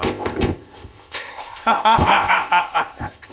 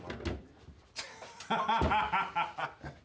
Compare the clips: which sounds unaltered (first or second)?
second